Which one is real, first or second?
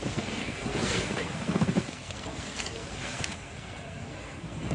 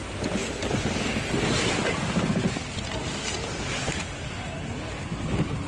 second